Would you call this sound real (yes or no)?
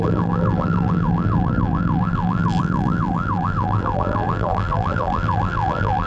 no